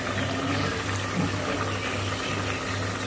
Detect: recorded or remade recorded